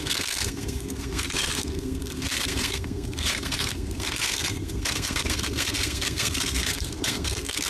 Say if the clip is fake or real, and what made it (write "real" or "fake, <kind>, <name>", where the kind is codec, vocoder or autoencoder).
fake, codec, SNAC